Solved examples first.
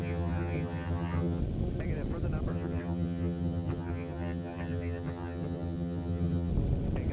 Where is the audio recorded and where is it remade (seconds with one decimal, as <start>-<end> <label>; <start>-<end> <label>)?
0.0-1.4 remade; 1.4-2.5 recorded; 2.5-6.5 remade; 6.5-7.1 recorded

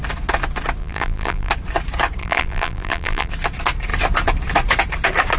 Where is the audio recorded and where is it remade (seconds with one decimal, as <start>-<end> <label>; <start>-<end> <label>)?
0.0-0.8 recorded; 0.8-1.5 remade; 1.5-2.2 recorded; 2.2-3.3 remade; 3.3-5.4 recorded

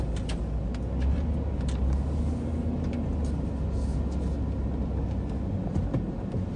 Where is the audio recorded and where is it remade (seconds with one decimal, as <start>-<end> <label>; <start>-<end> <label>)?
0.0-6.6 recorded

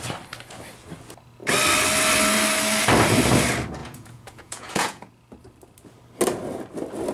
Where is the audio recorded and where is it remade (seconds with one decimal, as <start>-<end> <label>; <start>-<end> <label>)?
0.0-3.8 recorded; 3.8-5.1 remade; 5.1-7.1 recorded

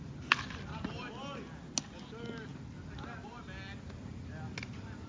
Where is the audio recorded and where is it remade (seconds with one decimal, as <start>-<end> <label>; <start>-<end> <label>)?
0.0-5.1 recorded

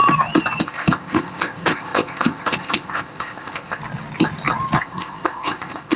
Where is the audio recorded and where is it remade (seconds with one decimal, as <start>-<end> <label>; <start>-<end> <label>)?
0.0-0.6 recorded; 0.6-3.8 remade; 3.8-4.8 recorded; 4.8-6.0 remade